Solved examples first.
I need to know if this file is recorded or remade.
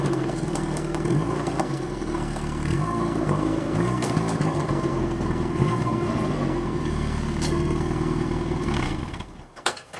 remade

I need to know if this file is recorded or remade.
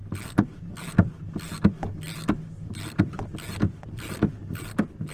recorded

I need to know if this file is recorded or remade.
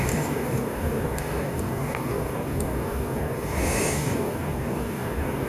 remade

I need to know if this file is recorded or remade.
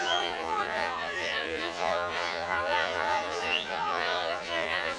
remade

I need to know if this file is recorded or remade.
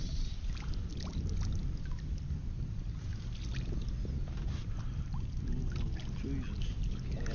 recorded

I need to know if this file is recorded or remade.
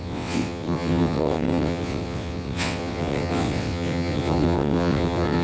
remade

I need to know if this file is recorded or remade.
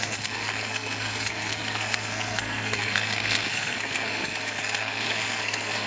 remade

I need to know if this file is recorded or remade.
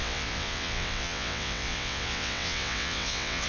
remade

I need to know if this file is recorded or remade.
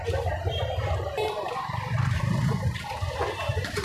remade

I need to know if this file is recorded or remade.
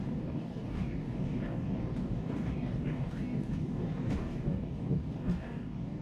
remade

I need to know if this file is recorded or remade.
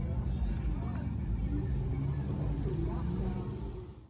recorded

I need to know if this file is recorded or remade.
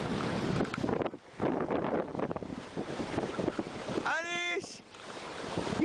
remade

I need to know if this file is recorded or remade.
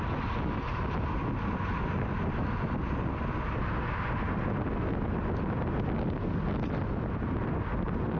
recorded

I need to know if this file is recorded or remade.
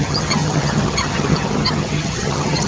remade